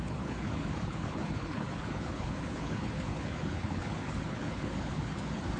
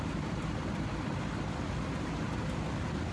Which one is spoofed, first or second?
first